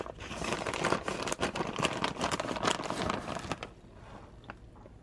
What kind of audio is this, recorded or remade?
recorded